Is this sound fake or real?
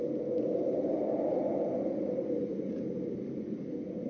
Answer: real